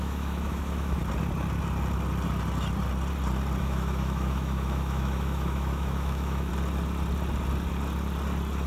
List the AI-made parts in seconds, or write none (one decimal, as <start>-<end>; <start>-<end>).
0.0-1.0; 3.6-6.5